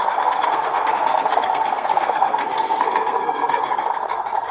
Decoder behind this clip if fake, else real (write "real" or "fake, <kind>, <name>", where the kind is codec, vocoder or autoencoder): fake, codec, SNAC